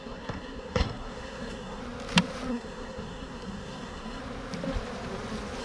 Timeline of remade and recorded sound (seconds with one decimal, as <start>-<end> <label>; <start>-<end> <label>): 0.0-1.8 remade; 1.8-2.5 recorded; 2.5-4.2 remade; 4.2-5.6 recorded